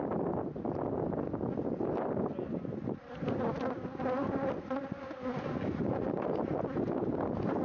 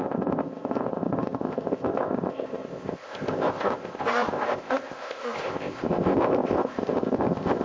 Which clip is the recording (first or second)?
first